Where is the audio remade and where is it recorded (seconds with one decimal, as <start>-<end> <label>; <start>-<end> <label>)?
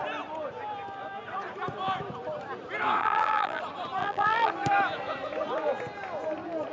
0.0-3.0 recorded; 3.0-3.6 remade; 3.6-4.0 recorded; 4.0-4.5 remade; 4.5-6.7 recorded